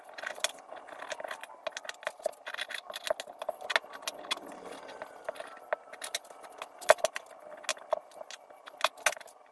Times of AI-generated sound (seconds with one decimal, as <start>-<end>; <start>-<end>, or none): none